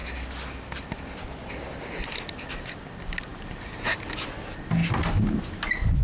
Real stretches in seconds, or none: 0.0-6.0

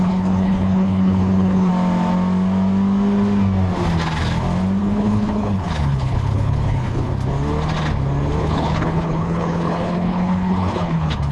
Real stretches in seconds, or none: 1.7-4.8; 7.1-8.4

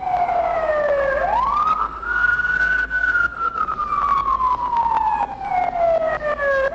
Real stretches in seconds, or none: 0.0-1.7; 3.6-6.7

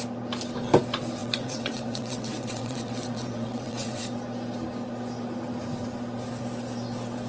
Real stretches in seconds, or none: 0.0-1.2; 4.0-7.3

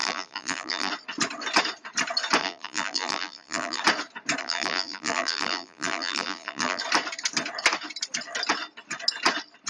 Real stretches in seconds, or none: 0.9-2.4; 3.8-4.4; 6.8-9.7

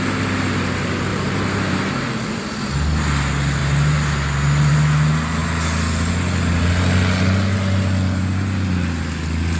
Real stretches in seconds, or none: 0.0-1.1; 2.7-9.6

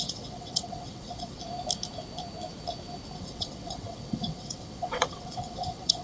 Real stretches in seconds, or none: 1.4-3.2